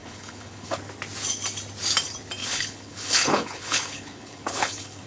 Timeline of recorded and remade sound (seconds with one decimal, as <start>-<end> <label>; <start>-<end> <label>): 0.0-0.8 remade; 0.8-2.4 recorded; 2.4-5.1 remade